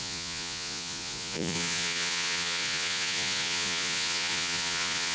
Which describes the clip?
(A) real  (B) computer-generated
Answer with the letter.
B